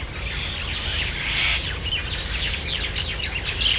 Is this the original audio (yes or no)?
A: yes